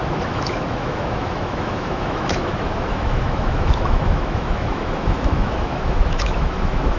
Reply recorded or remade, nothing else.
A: remade